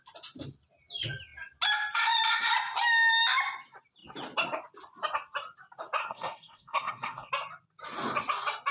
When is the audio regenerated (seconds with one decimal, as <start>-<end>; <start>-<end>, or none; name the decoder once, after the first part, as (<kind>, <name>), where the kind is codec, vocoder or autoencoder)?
6.0-7.3 (codec, SNAC)